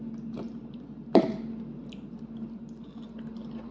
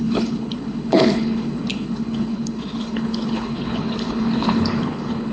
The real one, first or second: first